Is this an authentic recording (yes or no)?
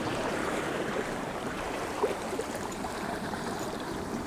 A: no